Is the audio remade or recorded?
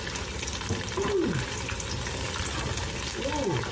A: recorded